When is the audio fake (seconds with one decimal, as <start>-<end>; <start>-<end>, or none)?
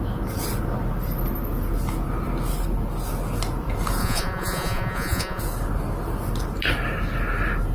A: 4.0-5.4